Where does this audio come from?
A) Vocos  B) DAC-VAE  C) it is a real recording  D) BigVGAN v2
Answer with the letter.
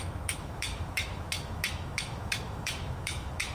B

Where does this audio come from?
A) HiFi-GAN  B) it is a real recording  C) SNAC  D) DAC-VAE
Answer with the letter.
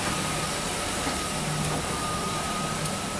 B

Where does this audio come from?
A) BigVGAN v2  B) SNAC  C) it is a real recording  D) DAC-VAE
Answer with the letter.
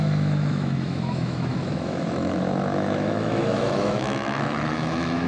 D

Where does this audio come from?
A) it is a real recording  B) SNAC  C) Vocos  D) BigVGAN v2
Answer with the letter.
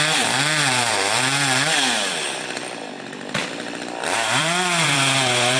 D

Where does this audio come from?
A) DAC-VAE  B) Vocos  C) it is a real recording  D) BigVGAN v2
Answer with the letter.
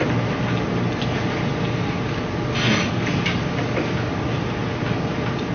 C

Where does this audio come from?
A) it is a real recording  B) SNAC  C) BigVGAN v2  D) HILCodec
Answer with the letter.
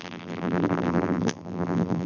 C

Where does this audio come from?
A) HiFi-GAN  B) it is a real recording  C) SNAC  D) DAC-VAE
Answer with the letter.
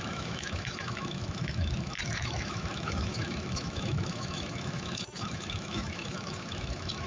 D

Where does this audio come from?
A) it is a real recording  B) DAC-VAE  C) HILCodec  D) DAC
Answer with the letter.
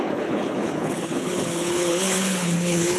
C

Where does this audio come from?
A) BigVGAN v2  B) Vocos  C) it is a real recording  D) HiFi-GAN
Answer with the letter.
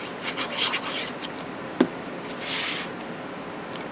C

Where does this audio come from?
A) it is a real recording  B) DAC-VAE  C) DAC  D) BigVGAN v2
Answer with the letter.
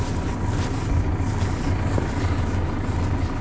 A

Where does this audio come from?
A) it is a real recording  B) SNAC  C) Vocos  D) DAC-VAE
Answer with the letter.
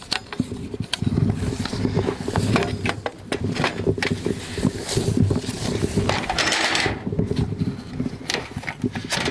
A